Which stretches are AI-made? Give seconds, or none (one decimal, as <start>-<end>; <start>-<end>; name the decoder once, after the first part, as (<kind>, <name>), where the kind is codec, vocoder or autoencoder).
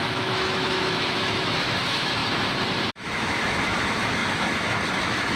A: 0.0-2.2 (autoencoder, DAC-VAE); 2.9-5.4